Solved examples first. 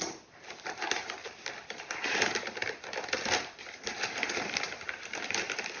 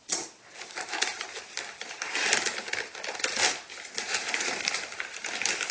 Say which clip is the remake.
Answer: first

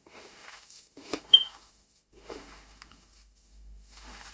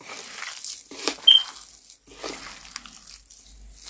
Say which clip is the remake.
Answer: first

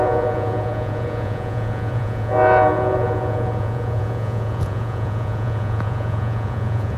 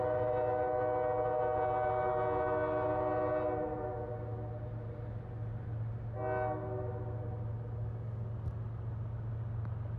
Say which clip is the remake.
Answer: first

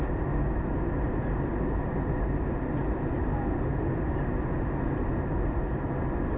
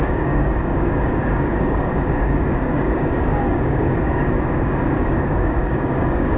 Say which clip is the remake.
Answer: second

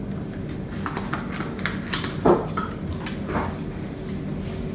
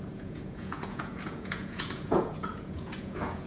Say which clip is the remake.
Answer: second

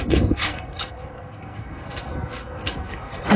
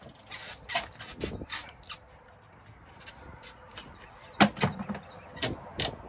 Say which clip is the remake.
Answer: first